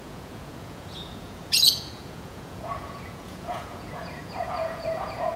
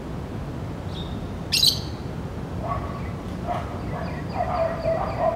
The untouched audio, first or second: second